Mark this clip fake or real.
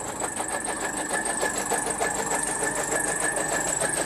real